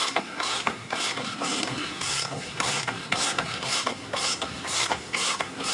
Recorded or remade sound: remade